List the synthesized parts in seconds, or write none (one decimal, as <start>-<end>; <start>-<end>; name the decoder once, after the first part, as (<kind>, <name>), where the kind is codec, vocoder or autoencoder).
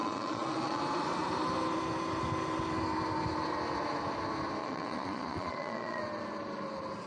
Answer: 0.0-0.8 (vocoder, Vocos); 4.6-6.0